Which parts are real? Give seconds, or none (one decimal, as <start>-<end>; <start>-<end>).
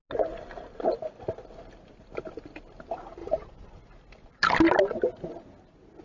0.0-3.2; 3.8-6.0